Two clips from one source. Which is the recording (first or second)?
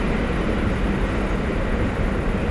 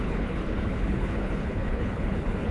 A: first